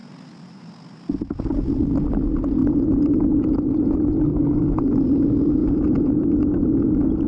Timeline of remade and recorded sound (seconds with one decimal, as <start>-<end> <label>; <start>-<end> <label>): 0.0-2.6 recorded; 2.6-3.3 remade; 3.3-4.3 recorded; 4.3-4.8 remade; 4.8-5.6 recorded; 5.6-6.5 remade; 6.5-7.3 recorded